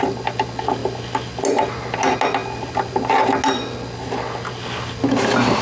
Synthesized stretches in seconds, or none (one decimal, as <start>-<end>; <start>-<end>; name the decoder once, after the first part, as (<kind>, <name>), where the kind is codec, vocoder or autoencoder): none